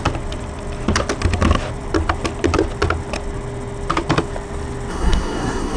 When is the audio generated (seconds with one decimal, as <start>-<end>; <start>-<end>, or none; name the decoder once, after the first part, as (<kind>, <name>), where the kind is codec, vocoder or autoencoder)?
4.9-5.8 (codec, SNAC)